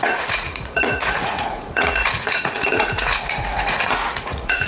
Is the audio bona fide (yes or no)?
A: no